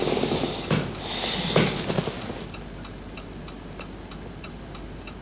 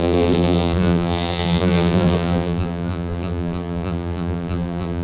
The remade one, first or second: second